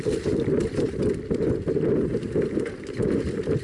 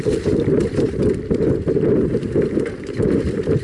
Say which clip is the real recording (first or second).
first